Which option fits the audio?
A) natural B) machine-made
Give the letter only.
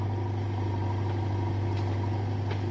A